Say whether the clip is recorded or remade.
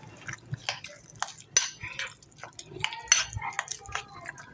recorded